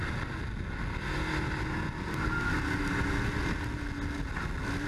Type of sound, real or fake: real